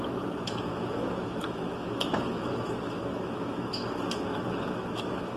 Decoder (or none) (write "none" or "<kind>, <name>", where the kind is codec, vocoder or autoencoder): autoencoder, DAC-VAE